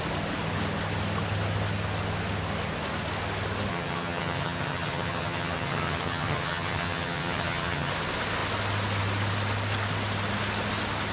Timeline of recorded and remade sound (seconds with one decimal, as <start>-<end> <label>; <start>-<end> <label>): 0.0-3.7 recorded; 3.7-7.9 remade; 7.9-11.1 recorded